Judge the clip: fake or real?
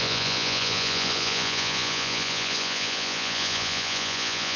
fake